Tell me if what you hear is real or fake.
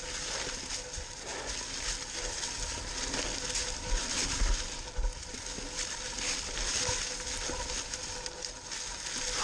real